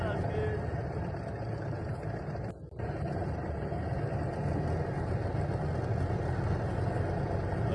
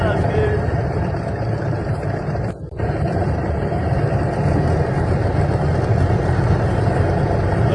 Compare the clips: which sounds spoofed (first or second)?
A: second